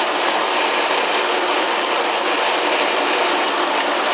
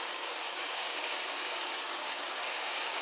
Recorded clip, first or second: first